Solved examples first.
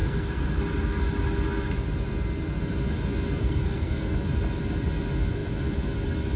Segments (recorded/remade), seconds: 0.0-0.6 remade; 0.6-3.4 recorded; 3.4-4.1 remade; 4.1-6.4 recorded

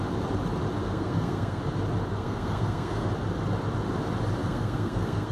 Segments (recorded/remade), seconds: 0.0-0.8 recorded; 0.8-1.6 remade; 1.6-2.1 recorded; 2.1-3.1 remade; 3.1-4.4 recorded; 4.4-5.3 remade

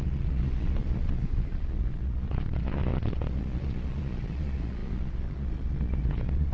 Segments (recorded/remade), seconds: 0.0-6.5 remade